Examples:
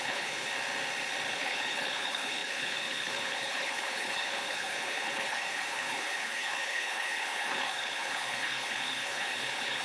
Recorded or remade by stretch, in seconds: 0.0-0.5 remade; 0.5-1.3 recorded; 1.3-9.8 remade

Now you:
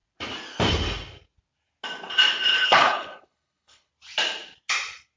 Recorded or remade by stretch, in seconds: 0.0-2.5 recorded; 2.5-3.9 remade; 3.9-5.2 recorded

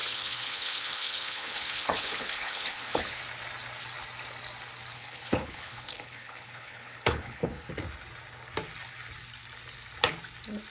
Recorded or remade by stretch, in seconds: 0.0-3.2 remade; 3.2-4.9 recorded; 4.9-7.7 remade; 7.7-10.7 recorded